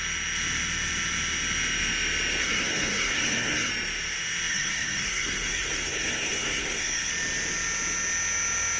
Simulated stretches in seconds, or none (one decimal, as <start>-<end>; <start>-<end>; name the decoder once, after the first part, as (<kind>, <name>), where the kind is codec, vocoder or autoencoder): 2.4-3.7 (codec, SNAC); 4.5-7.1